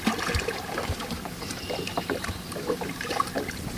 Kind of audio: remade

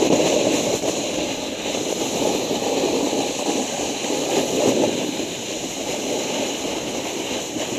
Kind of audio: recorded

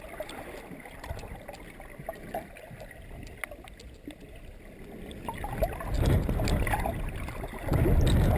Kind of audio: recorded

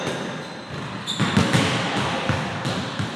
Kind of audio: recorded